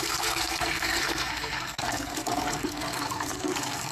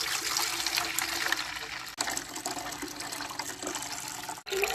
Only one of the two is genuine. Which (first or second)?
second